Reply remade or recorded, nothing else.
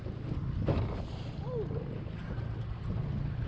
recorded